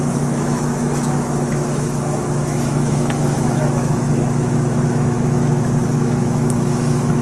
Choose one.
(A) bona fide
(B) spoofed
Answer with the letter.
B